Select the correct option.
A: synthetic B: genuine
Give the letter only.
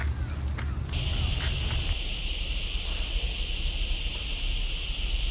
B